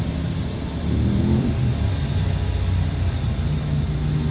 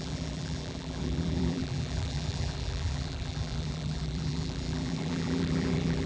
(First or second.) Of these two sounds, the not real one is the second